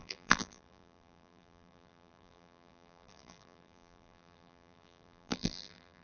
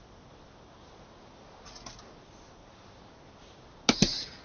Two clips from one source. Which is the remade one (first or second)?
first